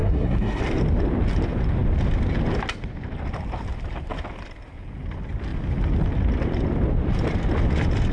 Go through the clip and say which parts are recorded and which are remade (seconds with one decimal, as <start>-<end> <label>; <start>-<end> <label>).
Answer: 0.0-0.6 remade; 0.6-8.1 recorded